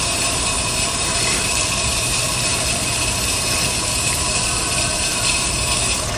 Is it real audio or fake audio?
fake